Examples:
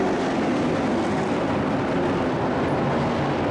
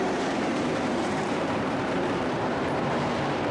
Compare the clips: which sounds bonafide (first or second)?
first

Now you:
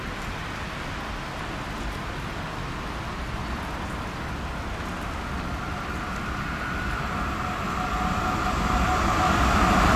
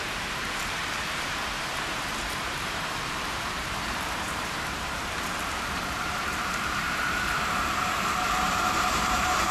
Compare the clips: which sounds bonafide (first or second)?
first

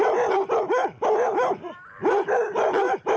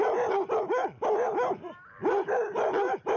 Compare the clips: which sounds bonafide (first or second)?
second